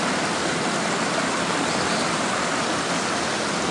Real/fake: real